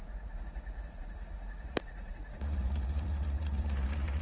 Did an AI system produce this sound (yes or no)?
yes